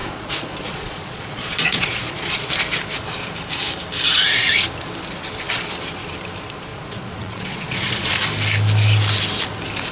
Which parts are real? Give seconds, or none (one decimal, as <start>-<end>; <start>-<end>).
2.5-6.7; 8.2-9.9